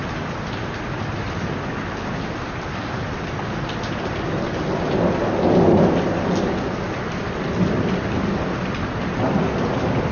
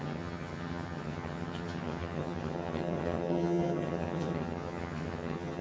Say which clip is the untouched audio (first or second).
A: first